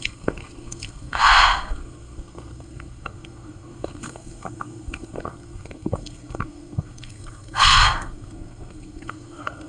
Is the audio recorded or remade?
remade